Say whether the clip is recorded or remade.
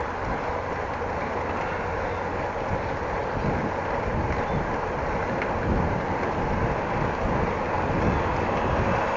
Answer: recorded